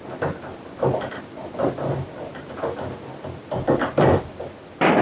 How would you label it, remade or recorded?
recorded